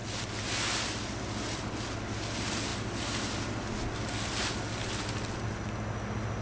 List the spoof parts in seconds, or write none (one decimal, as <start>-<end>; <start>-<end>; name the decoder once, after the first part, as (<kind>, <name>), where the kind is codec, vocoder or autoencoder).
none